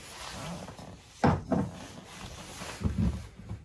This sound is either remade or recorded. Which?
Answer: recorded